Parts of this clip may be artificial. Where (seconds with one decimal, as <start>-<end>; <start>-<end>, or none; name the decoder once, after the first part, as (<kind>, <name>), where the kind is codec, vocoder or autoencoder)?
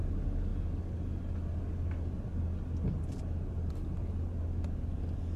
none